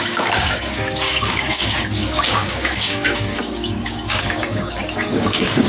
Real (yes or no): no